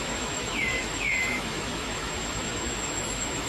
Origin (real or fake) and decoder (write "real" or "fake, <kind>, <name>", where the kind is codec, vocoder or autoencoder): fake, autoencoder, DAC-VAE